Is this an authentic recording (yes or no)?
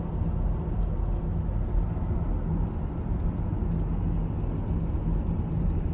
yes